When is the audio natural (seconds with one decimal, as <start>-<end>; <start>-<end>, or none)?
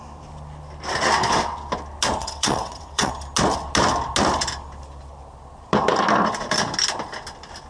0.0-2.2; 3.1-7.7